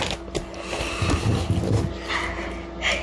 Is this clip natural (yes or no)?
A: yes